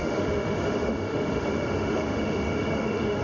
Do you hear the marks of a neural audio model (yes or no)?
yes